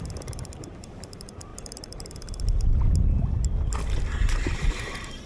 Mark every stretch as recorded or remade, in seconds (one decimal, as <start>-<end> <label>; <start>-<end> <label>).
0.0-5.3 recorded